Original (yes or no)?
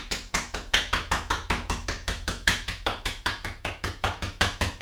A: no